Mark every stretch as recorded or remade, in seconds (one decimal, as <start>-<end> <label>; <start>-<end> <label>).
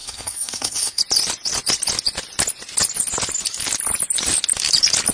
0.0-1.0 remade; 1.0-5.1 recorded